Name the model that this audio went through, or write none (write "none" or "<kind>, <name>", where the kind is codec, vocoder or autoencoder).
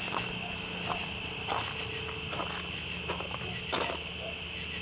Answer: none